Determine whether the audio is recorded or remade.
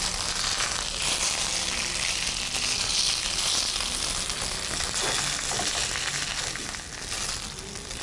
recorded